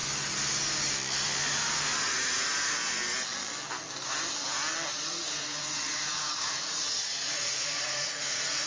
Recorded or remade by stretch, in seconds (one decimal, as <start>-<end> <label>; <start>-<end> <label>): 0.0-4.9 recorded; 4.9-8.7 remade